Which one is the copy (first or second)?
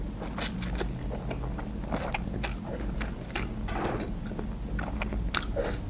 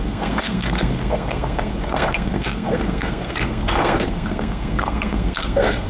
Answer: second